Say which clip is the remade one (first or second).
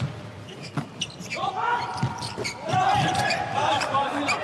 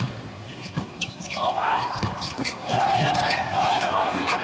second